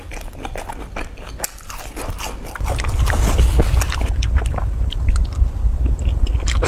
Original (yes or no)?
yes